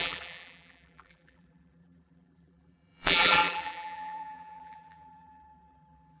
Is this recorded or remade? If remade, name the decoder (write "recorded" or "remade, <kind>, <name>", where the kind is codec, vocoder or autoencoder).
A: remade, vocoder, BigVGAN v2